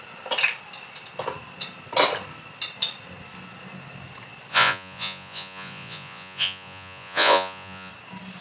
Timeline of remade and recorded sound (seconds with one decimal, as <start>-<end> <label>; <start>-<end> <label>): 0.0-4.5 recorded; 4.5-7.9 remade; 7.9-8.4 recorded